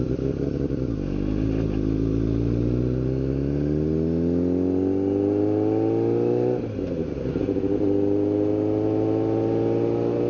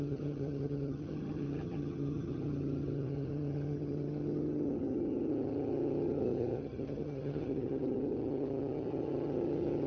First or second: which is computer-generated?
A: second